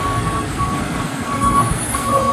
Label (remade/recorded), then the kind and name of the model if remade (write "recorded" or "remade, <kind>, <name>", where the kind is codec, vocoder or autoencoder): remade, codec, SNAC